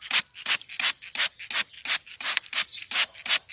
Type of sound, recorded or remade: recorded